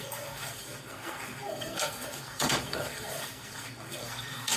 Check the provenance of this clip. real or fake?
fake